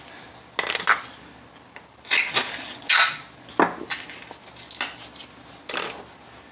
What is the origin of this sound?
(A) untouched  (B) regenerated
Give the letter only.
A